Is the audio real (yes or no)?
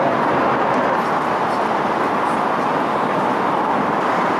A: yes